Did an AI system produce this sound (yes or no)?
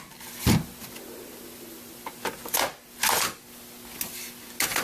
no